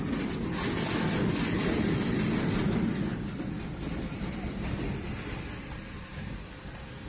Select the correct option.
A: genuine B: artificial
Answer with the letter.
A